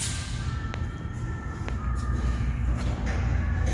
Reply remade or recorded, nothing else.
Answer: recorded